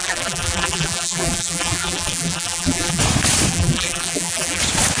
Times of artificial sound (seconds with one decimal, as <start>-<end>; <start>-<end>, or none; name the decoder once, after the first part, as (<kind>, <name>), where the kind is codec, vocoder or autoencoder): 0.0-3.0 (vocoder, BigVGAN v2); 3.5-4.6